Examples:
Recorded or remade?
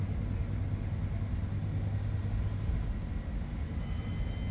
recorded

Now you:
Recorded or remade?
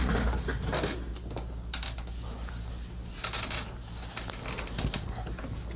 recorded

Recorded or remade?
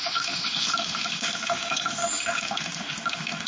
remade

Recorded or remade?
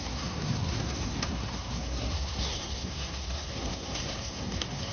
remade